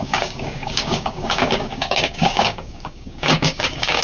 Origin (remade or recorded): remade